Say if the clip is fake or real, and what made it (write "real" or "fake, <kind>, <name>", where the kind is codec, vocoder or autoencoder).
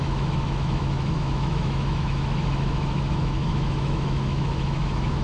fake, autoencoder, DAC-VAE